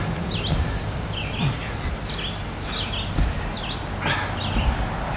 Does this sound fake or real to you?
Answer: real